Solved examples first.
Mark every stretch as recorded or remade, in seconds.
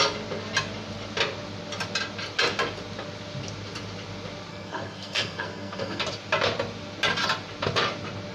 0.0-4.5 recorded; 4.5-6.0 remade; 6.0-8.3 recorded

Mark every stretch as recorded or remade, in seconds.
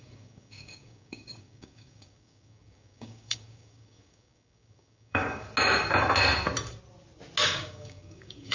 0.0-5.5 remade; 5.5-7.4 recorded; 7.4-8.5 remade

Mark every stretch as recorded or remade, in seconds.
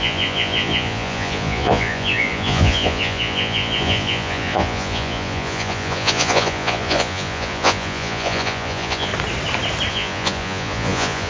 0.0-9.1 remade; 9.1-9.9 recorded; 9.9-11.3 remade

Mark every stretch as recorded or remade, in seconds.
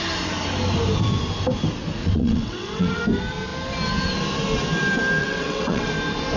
0.0-2.0 recorded; 2.0-3.0 remade; 3.0-5.2 recorded; 5.2-5.9 remade; 5.9-6.4 recorded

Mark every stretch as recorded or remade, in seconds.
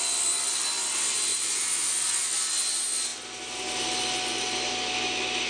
0.0-1.3 recorded; 1.3-2.1 remade; 2.1-5.5 recorded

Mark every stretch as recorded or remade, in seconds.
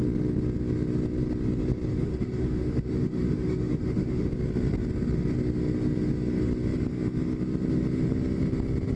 0.0-1.9 recorded; 1.9-4.3 remade; 4.3-9.0 recorded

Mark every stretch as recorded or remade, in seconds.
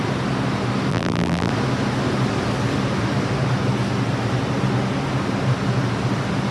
0.0-0.9 recorded; 0.9-1.5 remade; 1.5-6.5 recorded